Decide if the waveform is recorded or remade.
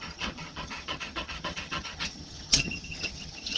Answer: remade